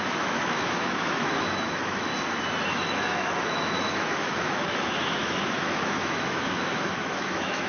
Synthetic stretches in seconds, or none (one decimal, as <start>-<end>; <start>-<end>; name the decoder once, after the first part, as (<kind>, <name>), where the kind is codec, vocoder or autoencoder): 0.0-2.1 (autoencoder, DAC-VAE); 2.7-7.7

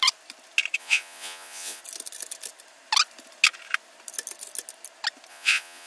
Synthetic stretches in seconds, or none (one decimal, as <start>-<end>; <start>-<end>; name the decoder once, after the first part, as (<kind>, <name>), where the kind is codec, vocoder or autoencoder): 0.8-1.8 (vocoder, Vocos); 5.3-5.9

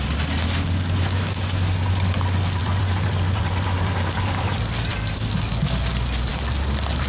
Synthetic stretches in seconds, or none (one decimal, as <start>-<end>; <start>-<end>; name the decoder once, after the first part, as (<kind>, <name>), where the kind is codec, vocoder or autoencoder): 2.6-4.9 (vocoder, BigVGAN v2)

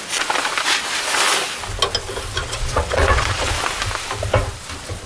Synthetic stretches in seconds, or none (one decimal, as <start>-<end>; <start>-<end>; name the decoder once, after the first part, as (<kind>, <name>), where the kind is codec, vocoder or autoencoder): 2.4-3.5 (vocoder, Vocos)

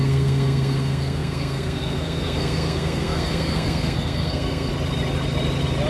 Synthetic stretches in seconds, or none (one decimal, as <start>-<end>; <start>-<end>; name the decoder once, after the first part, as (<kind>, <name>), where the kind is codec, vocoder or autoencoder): 0.0-4.7 (codec, SNAC)

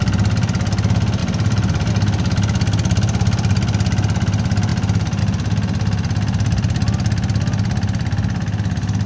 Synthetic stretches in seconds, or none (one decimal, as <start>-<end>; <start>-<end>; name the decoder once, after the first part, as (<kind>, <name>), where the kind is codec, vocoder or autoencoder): 1.2-1.9 (vocoder, BigVGAN v2)

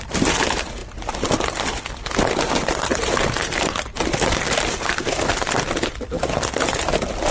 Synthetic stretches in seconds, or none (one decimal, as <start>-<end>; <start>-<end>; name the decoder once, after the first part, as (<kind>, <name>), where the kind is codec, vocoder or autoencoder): none

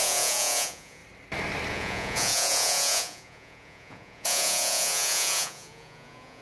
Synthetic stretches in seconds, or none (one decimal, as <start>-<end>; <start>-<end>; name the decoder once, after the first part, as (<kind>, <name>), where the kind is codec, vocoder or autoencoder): 0.0-1.0 (vocoder, Vocos); 1.7-6.4